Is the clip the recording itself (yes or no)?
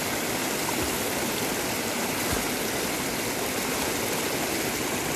yes